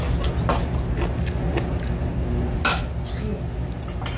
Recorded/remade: recorded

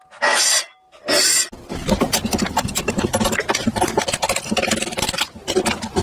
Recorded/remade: recorded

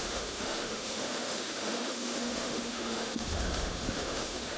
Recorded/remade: remade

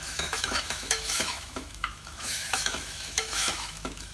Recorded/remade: remade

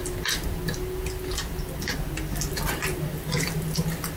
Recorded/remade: recorded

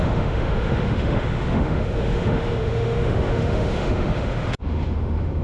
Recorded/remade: remade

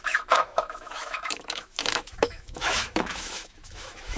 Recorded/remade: remade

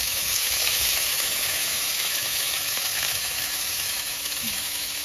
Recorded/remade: remade